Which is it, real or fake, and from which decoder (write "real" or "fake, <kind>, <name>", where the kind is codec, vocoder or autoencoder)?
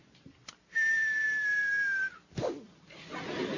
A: real